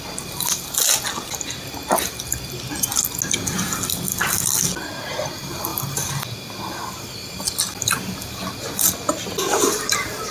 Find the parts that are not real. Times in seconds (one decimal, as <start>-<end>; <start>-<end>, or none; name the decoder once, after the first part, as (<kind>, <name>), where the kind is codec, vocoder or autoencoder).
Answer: none